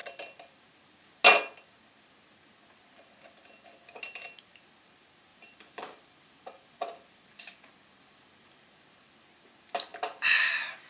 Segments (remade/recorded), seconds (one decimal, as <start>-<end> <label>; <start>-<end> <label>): 0.0-5.3 recorded; 5.3-7.4 remade; 7.4-10.9 recorded